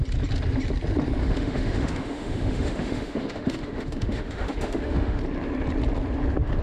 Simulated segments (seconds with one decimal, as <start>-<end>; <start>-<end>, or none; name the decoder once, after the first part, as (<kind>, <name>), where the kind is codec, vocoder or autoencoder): 1.2-5.2 (autoencoder, DAC-VAE)